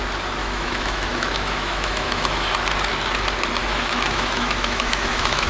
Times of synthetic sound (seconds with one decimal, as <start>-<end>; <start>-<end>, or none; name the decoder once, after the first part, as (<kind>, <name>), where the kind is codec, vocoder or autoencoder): 0.4-2.5 (autoencoder, DAC-VAE); 3.6-5.5